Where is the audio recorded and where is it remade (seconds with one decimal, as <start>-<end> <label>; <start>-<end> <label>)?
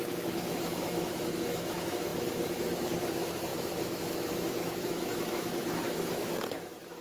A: 0.0-7.0 remade